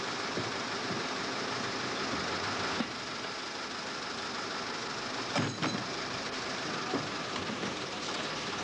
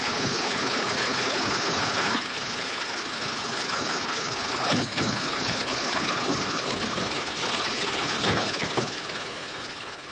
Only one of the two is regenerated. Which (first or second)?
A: second